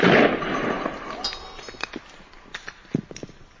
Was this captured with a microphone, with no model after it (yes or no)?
yes